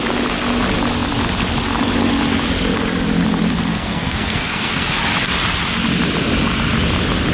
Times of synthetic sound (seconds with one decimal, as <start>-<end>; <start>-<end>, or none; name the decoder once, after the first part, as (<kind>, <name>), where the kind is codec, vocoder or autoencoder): 3.7-5.0 (codec, SNAC)